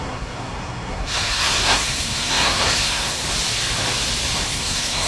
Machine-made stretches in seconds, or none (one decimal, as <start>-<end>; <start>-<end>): 0.0-3.2; 4.5-5.1